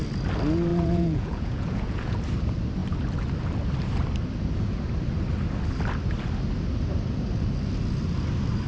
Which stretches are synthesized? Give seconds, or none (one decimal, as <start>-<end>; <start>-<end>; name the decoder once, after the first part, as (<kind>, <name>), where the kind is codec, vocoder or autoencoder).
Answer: 0.7-2.2 (vocoder, Vocos)